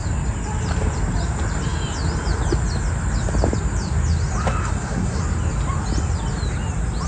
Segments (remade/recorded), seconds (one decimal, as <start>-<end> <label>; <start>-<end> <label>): 0.0-4.6 recorded; 4.6-5.2 remade; 5.2-7.1 recorded